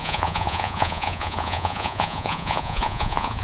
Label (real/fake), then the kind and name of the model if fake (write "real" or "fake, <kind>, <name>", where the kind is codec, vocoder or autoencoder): fake, vocoder, Vocos